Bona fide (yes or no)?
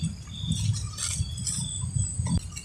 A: yes